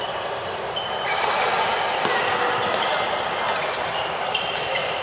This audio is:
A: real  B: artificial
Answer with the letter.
A